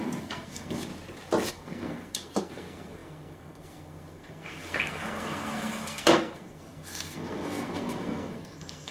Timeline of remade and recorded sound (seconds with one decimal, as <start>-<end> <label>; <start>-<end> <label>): 0.0-0.9 remade; 0.9-1.5 recorded; 1.5-8.9 remade